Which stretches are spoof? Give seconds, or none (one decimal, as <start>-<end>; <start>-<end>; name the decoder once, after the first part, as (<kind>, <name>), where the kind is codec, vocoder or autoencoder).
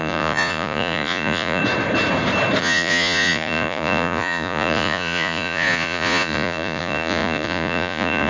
0.0-1.6 (vocoder, Vocos); 2.6-8.3